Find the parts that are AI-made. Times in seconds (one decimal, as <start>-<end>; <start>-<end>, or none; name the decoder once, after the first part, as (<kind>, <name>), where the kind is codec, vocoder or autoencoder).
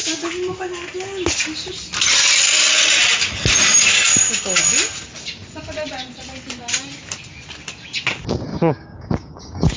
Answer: 8.5-9.8 (codec, DAC)